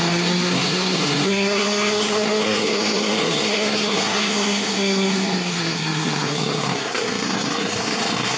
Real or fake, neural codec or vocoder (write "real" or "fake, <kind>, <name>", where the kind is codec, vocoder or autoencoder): fake, codec, SNAC